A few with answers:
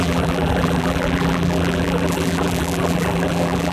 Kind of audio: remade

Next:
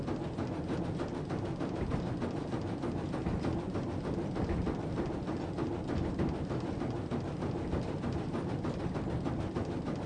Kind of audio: recorded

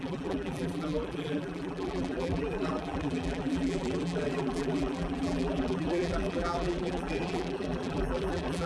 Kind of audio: remade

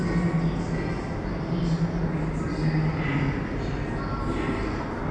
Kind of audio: recorded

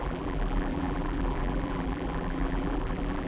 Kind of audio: remade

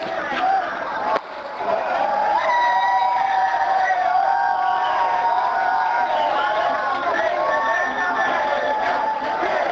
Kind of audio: remade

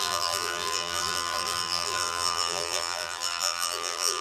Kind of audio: remade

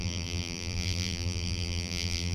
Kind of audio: remade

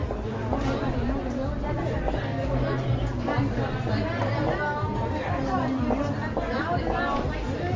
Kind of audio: recorded